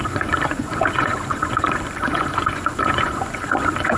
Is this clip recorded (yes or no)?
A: no